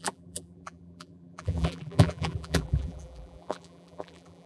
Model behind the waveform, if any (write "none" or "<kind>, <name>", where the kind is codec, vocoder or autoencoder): vocoder, BigVGAN v2